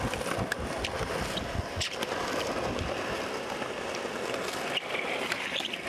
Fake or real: real